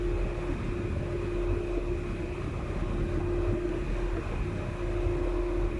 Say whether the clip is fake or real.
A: real